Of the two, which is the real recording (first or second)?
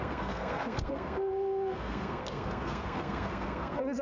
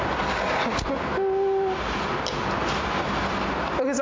second